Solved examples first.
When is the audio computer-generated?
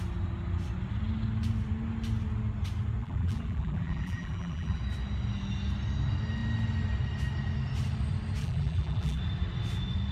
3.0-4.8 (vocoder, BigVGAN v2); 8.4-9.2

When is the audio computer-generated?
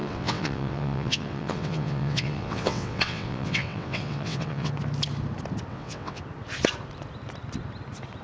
0.0-4.7 (vocoder, WaveNeXt); 5.7-6.2